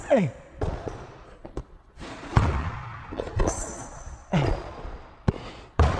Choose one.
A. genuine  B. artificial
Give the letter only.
B